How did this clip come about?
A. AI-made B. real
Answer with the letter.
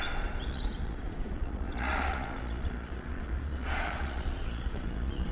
A